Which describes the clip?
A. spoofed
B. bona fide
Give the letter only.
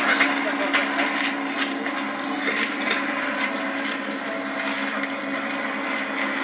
B